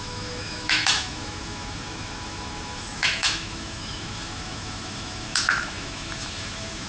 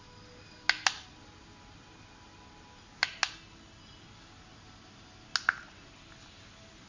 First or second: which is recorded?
second